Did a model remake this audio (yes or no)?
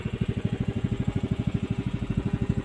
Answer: yes